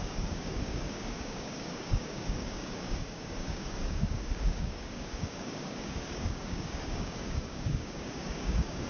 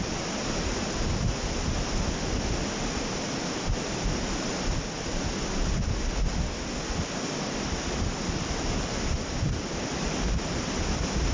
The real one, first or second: second